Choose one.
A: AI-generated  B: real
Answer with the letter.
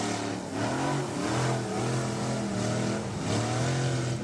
B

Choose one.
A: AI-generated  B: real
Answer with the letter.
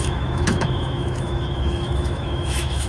A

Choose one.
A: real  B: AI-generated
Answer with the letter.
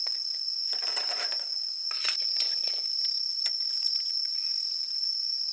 B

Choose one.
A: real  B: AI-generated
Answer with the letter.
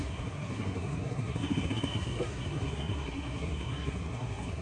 B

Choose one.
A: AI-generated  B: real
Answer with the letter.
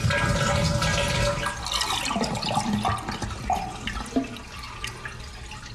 B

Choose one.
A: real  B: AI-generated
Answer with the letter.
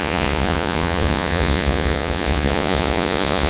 B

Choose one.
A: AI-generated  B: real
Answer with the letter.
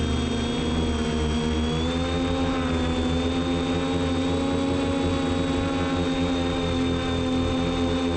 B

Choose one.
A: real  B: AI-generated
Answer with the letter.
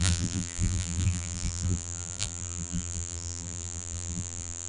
B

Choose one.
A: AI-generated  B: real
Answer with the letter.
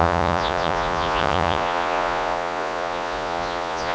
A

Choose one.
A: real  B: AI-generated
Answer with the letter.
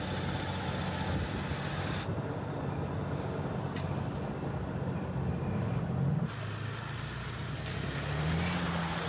A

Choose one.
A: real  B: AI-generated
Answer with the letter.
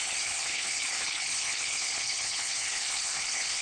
B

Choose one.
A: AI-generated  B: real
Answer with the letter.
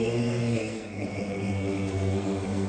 A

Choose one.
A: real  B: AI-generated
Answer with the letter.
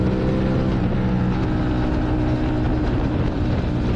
A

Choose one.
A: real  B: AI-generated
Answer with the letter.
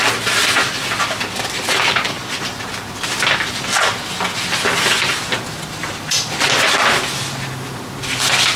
A